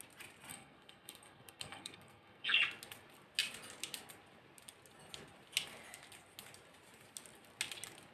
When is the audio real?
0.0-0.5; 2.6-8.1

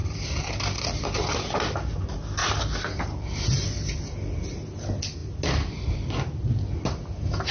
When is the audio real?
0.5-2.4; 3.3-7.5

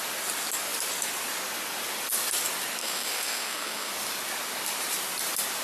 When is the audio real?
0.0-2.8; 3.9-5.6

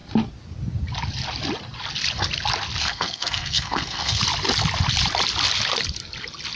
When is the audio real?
0.0-2.8; 4.2-6.6

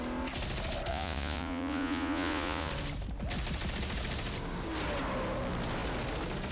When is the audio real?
0.0-0.9; 2.7-6.5